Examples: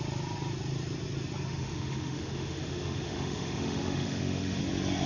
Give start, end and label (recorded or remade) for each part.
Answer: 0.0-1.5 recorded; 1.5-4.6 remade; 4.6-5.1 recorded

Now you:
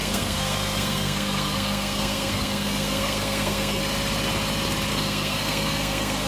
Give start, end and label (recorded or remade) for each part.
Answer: 0.0-3.8 remade; 3.8-4.9 recorded; 4.9-6.3 remade

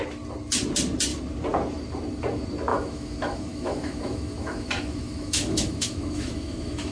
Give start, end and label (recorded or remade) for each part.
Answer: 0.0-2.7 recorded; 2.7-6.9 remade